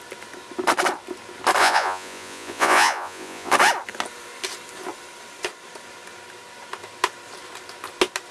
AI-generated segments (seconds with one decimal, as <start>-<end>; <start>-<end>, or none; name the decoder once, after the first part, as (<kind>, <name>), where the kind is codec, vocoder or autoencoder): 1.6-3.5 (vocoder, Vocos)